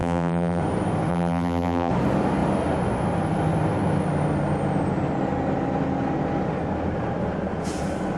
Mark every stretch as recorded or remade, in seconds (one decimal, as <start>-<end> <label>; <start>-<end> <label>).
0.0-0.6 remade; 0.6-1.1 recorded; 1.1-1.9 remade; 1.9-8.2 recorded